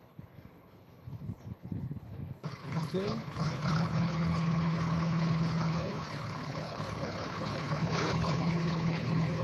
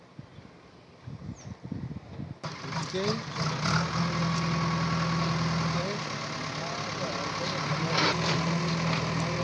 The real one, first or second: second